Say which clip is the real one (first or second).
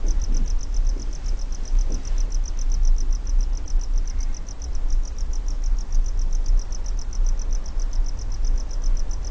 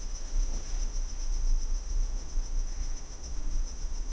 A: first